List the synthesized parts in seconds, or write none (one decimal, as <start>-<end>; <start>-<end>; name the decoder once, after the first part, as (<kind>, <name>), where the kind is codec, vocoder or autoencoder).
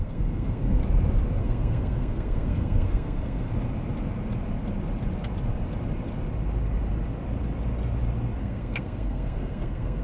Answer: 0.0-0.8 (codec, SNAC); 1.4-3.5; 8.4-10.0